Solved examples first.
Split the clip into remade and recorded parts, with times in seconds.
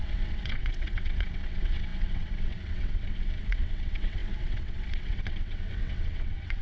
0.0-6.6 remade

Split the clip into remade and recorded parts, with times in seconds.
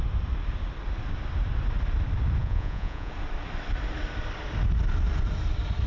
0.0-2.4 recorded; 2.4-3.1 remade; 3.1-5.9 recorded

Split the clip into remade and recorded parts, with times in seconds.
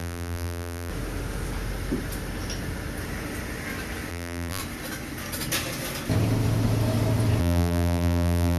0.0-0.9 remade; 0.9-4.1 recorded; 4.1-4.6 remade; 4.6-7.4 recorded; 7.4-8.6 remade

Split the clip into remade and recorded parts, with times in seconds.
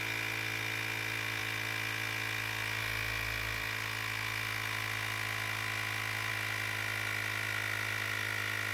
0.0-8.7 recorded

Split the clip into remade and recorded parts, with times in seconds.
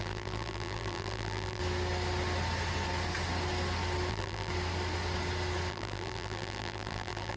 0.0-1.6 remade; 1.6-4.1 recorded; 4.1-4.5 remade; 4.5-5.7 recorded; 5.7-7.4 remade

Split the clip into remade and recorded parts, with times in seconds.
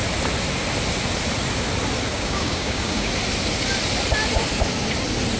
0.0-2.1 recorded; 2.1-3.1 remade; 3.1-5.4 recorded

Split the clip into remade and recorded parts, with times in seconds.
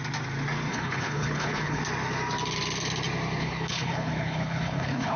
0.0-0.7 recorded; 0.7-1.8 remade; 1.8-3.4 recorded; 3.4-5.2 remade